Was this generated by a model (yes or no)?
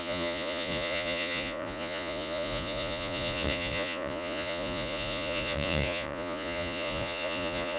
yes